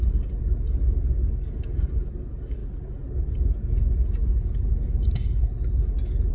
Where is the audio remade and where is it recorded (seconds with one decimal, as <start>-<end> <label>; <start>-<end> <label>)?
0.0-6.3 recorded